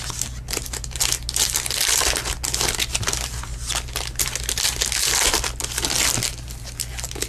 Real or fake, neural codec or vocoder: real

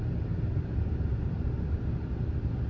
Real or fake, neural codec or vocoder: real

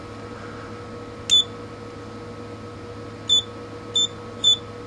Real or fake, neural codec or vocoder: real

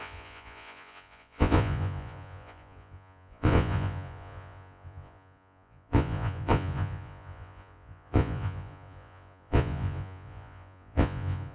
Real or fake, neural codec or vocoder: fake, vocoder, Vocos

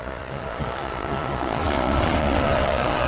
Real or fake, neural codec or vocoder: fake, vocoder, Vocos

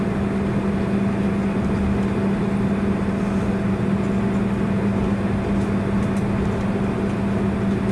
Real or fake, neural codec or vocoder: real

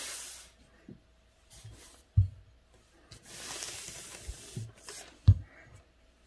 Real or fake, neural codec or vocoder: real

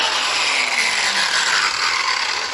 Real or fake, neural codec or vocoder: real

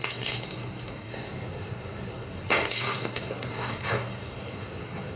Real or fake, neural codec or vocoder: fake, codec, SNAC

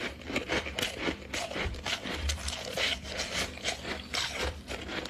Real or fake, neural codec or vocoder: real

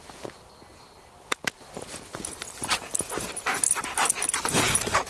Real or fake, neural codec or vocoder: real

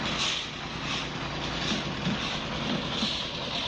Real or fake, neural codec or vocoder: real